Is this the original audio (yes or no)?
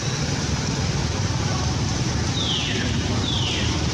no